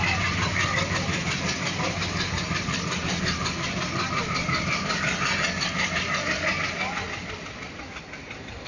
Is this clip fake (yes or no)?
no